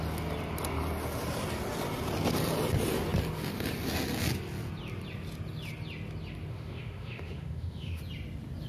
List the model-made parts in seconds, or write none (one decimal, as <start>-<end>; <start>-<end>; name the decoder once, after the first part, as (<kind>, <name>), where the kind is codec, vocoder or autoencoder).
6.5-8.0 (autoencoder, DAC-VAE)

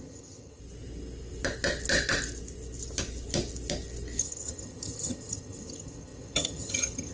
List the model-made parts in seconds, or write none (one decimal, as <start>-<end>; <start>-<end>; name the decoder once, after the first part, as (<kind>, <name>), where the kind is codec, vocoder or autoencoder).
0.0-0.6 (vocoder, HiFi-GAN); 4.2-7.1